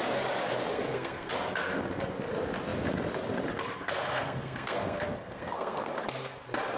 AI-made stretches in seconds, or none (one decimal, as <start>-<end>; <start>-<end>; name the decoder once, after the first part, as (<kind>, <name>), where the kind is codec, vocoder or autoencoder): 0.7-1.3 (codec, SNAC); 4.1-5.9